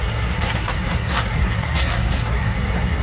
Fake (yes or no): yes